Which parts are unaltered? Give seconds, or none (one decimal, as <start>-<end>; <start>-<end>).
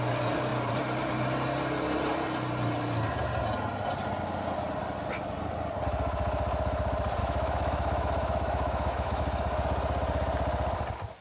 0.0-7.2; 9.2-11.2